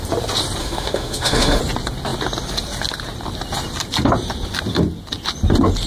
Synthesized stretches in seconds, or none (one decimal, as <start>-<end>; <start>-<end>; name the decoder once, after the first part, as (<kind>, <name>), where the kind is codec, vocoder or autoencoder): 0.6-1.6 (autoencoder, DAC-VAE)